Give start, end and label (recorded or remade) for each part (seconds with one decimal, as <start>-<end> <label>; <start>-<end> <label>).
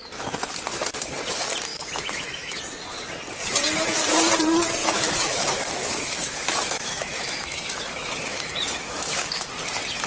0.0-1.7 recorded; 1.7-2.6 remade; 2.6-4.8 recorded; 4.8-9.5 remade; 9.5-10.1 recorded